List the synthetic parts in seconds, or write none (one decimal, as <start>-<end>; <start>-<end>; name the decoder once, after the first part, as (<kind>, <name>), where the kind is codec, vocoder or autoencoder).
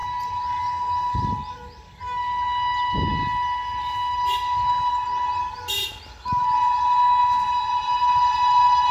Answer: none